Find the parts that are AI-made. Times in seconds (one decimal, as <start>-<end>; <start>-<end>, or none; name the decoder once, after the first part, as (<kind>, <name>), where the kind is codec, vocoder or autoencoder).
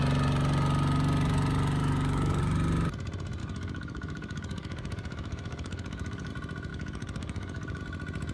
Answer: 1.8-2.4 (codec, DAC); 3.4-6.3; 6.7-7.8